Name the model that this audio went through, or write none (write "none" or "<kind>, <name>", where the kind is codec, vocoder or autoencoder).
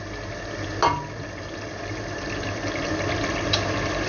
none